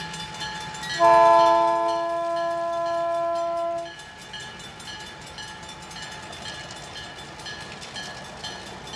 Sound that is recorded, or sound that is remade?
recorded